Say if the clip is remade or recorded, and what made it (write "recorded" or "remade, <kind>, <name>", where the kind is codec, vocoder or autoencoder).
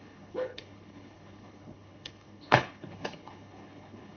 remade, codec, HILCodec